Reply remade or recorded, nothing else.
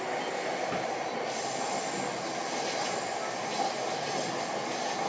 recorded